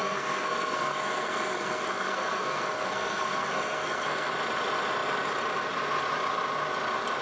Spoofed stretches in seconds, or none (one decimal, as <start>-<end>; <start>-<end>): 0.0-4.3